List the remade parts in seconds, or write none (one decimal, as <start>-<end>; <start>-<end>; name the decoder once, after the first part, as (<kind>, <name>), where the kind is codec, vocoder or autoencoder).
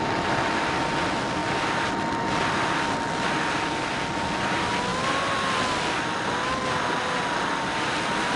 none